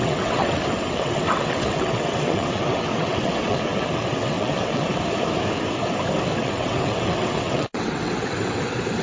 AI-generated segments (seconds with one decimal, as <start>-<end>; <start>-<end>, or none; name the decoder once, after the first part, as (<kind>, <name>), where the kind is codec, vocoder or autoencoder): 0.0-5.0 (vocoder, WaveNeXt); 6.4-9.0